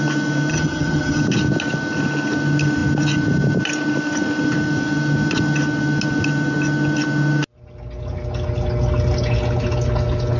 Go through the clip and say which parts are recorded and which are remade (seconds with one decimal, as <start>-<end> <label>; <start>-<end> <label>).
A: 0.0-0.5 recorded; 0.5-1.2 remade; 1.2-10.4 recorded